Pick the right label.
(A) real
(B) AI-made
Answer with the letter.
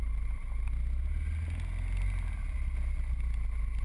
A